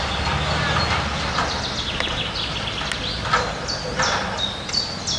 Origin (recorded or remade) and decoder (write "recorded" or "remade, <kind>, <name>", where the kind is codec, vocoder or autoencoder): recorded